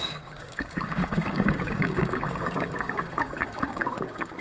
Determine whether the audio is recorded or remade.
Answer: remade